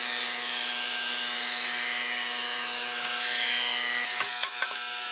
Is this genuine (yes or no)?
no